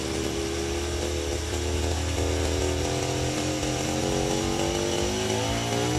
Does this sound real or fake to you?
real